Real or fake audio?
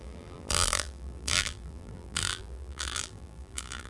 fake